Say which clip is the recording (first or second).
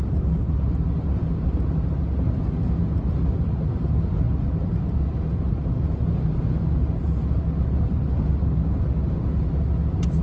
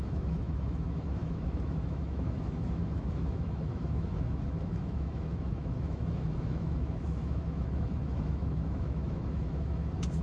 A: first